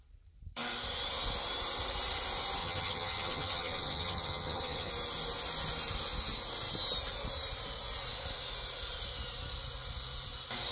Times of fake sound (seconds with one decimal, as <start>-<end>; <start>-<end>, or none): 2.6-4.9